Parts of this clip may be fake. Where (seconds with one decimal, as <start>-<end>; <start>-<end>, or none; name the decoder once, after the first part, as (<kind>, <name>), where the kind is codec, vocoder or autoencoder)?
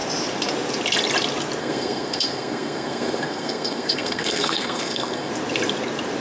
1.6-5.3 (codec, SNAC)